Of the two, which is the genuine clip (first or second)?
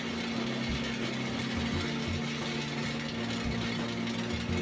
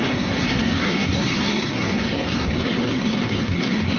first